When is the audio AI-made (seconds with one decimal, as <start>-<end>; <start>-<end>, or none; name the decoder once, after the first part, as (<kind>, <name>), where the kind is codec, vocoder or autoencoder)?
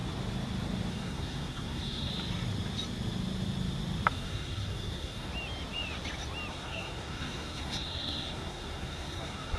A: 0.9-2.1 (codec, SNAC); 4.1-5.3; 6.5-9.6